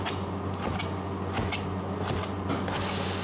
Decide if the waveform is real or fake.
real